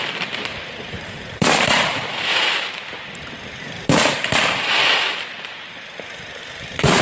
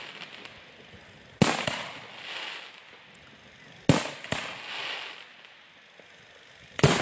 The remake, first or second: first